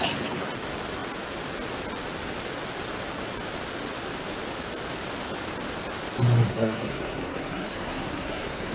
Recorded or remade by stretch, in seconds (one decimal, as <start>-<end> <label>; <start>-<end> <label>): 0.0-6.5 recorded; 6.5-8.7 remade